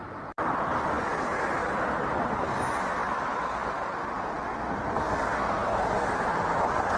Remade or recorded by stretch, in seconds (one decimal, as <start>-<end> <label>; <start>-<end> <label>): 0.0-7.0 recorded